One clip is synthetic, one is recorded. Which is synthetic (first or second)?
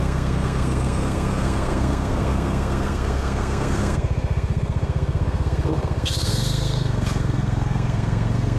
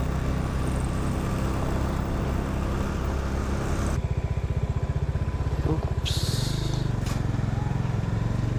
first